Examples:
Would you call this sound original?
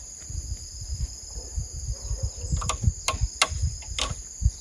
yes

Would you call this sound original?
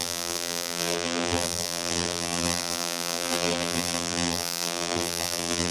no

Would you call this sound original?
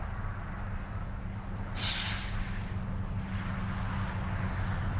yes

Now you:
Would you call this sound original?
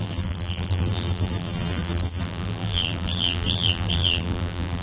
no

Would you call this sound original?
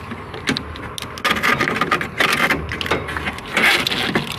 yes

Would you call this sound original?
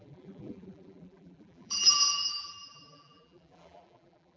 no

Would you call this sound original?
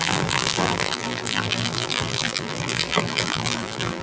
no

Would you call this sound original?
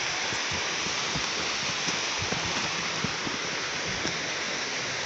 yes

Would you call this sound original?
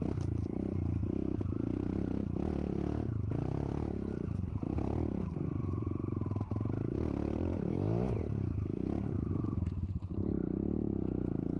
no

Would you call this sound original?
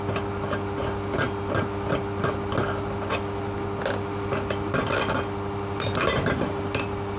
yes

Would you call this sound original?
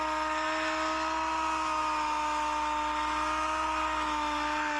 yes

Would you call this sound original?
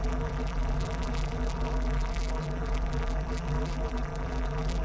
no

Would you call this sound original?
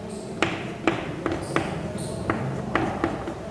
no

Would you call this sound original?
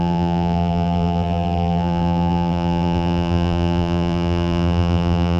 no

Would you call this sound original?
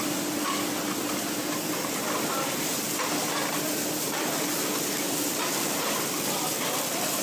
no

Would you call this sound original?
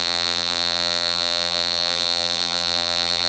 no